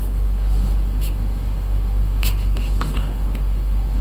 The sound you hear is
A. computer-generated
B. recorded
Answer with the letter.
A